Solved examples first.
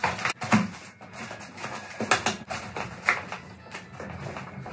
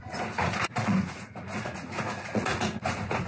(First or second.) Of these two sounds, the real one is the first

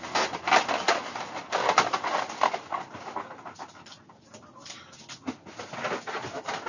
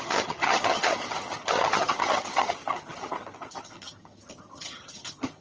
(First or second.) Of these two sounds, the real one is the first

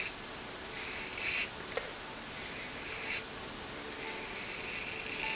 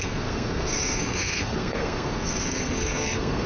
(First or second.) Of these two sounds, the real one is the first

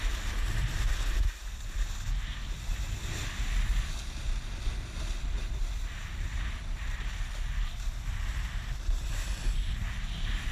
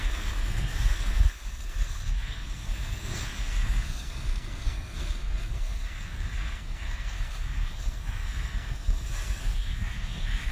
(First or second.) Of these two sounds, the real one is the first